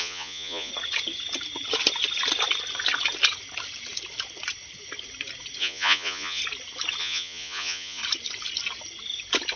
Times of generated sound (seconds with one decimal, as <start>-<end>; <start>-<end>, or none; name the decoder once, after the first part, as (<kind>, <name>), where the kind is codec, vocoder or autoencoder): 0.0-0.7 (vocoder, Vocos); 5.6-6.4; 7.0-8.0